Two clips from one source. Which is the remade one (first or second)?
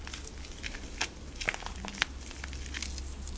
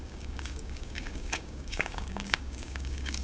second